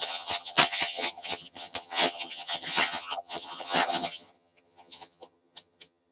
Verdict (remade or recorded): remade